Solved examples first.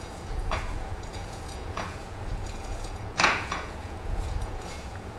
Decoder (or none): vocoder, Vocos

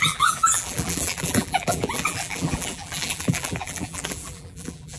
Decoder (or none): vocoder, BigVGAN v2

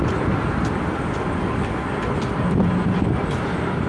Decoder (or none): none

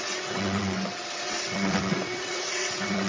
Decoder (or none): vocoder, WaveNeXt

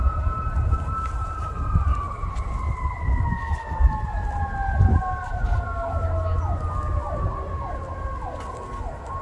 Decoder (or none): none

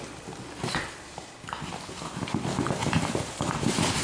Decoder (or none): none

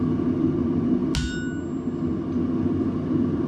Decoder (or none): none